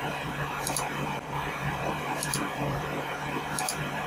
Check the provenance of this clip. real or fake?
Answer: fake